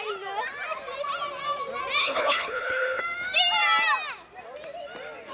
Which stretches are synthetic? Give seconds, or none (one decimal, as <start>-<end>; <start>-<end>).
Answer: 2.0-3.0